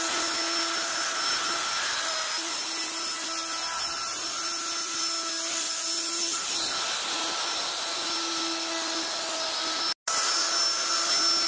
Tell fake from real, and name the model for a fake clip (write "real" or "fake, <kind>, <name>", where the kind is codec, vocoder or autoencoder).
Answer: real